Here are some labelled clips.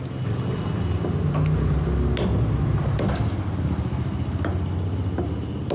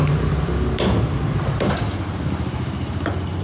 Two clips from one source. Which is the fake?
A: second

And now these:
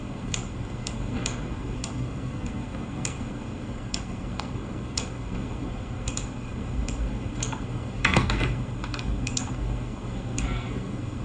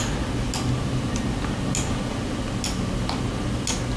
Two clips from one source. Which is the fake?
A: first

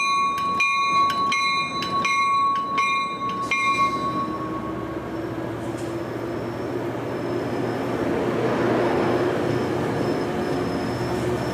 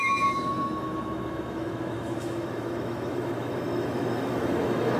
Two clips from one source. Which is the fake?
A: second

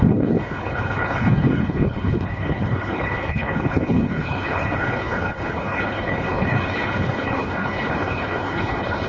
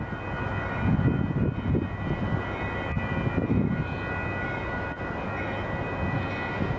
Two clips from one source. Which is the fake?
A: first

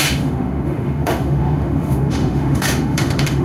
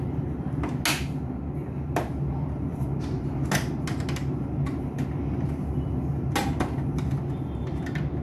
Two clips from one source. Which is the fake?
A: first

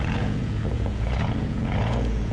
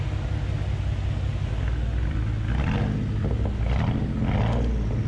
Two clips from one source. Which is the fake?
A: first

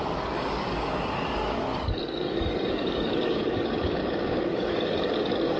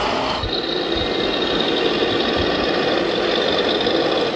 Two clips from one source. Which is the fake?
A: first